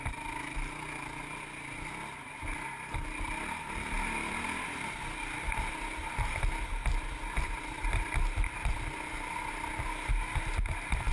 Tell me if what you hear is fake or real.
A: real